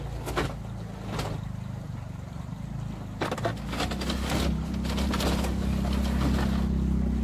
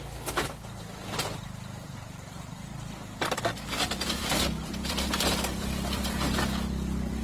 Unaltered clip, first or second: first